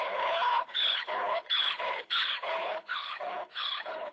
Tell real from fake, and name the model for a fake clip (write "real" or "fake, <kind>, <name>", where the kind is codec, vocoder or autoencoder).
fake, codec, HILCodec